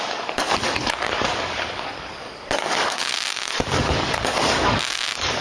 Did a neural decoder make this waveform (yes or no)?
yes